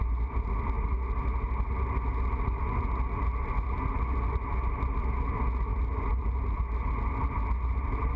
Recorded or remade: recorded